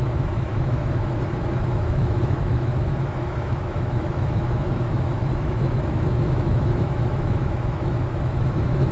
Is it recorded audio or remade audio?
remade